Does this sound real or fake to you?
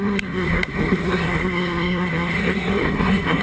fake